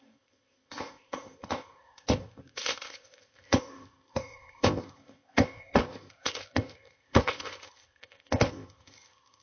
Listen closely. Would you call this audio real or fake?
fake